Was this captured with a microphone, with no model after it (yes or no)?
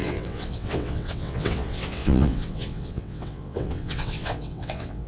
no